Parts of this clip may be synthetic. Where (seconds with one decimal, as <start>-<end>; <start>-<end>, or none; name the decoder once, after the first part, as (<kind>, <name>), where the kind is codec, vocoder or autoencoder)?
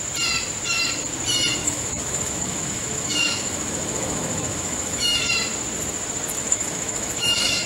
1.6-5.2 (autoencoder, DAC-VAE); 6.4-7.7